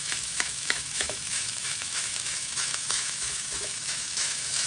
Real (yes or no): no